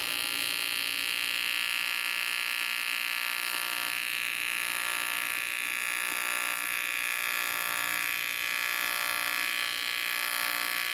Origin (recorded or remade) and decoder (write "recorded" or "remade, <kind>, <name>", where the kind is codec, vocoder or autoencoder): recorded